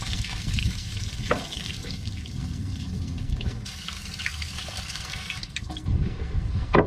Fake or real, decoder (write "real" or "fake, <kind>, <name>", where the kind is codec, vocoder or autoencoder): fake, codec, SNAC